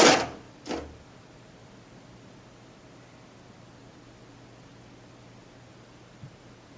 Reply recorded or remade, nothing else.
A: recorded